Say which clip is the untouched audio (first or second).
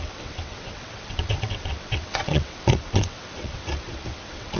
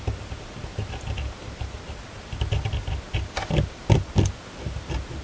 second